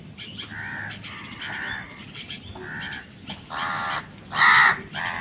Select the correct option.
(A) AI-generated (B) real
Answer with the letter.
B